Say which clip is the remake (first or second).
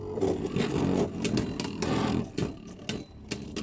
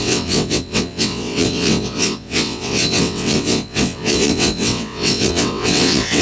second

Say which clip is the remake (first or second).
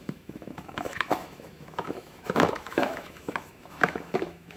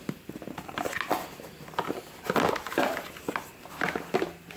first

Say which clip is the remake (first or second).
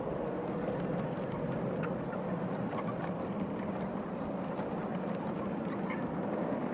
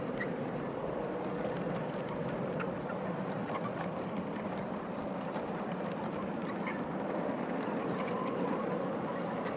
second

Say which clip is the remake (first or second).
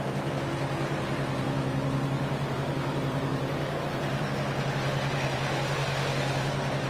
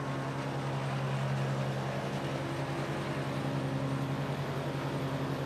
first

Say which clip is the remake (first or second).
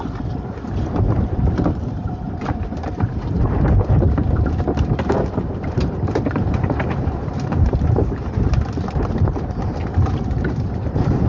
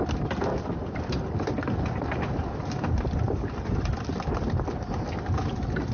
first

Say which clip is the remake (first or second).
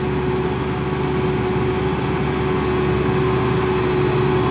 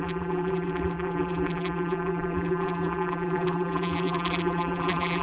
second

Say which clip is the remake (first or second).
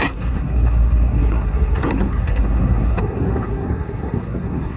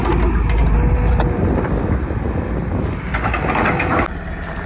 first